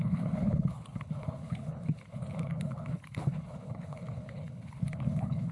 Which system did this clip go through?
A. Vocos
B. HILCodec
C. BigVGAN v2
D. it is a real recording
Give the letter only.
B